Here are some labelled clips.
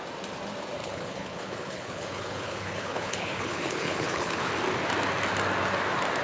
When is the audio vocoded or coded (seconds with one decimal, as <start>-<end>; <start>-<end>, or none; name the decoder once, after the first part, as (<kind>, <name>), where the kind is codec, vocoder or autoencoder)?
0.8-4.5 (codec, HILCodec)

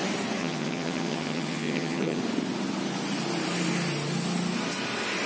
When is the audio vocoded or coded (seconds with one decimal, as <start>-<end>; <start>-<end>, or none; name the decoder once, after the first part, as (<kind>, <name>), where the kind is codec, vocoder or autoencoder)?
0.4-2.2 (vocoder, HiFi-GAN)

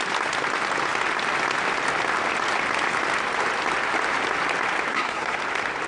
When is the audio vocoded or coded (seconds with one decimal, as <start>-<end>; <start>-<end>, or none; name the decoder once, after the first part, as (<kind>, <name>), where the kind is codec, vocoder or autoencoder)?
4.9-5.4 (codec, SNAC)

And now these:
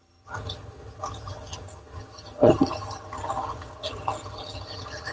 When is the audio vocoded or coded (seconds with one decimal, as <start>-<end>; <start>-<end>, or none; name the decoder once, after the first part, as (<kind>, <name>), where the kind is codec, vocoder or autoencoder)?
0.0-5.1 (vocoder, HiFi-GAN)

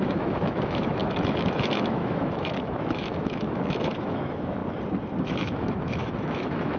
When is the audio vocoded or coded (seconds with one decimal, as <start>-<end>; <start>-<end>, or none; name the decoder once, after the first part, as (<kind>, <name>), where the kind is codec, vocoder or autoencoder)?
0.0-4.6 (autoencoder, DAC-VAE); 5.2-6.8

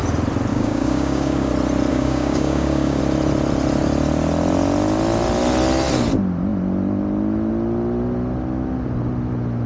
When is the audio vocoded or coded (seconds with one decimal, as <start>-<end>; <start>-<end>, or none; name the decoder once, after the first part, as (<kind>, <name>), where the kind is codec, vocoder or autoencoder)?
0.5-1.5 (codec, DAC); 1.9-3.0